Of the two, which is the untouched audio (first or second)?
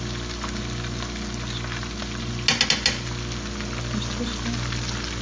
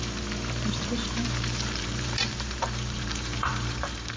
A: first